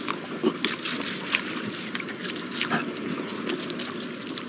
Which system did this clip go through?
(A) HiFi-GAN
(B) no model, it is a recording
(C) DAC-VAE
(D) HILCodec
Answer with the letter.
B